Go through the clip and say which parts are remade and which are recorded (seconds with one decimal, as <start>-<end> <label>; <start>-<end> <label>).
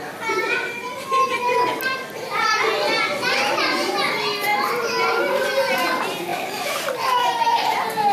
0.0-1.3 recorded; 1.3-2.5 remade; 2.5-8.1 recorded